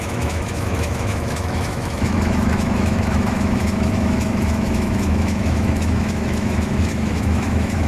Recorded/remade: remade